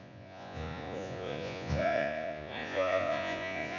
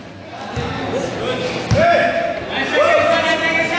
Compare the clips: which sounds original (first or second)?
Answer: second